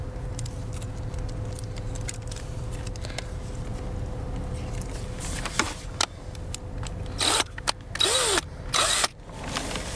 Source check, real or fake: real